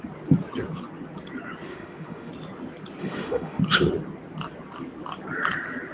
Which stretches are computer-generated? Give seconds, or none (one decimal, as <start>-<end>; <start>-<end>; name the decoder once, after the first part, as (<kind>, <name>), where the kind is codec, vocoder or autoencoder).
1.7-2.3 (autoencoder, DAC-VAE); 3.0-3.6